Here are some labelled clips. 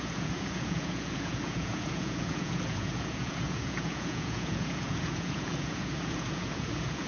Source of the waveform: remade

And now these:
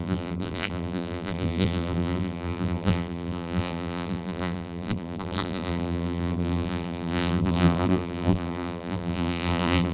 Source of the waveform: remade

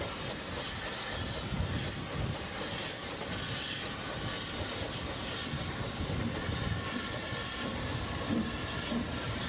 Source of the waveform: recorded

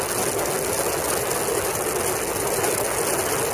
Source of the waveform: recorded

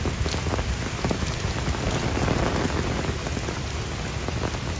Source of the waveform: recorded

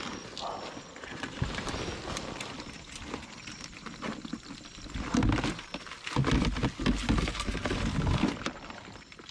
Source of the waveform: recorded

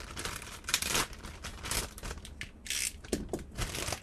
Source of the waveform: recorded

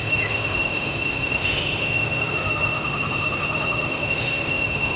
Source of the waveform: remade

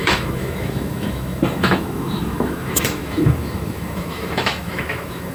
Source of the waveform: remade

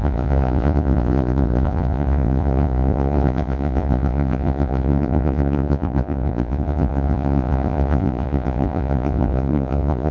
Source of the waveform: remade